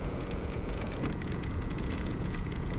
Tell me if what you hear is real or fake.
fake